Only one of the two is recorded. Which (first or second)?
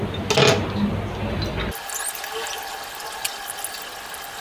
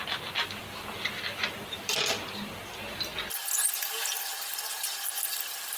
first